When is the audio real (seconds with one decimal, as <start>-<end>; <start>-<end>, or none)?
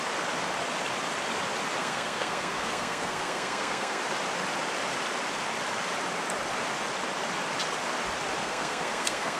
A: 0.0-1.8; 4.0-8.4